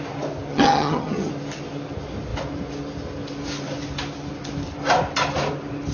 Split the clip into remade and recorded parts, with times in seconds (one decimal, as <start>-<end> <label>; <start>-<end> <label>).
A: 0.0-0.5 recorded; 0.5-1.3 remade; 1.3-5.9 recorded